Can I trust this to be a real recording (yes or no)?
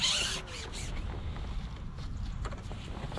yes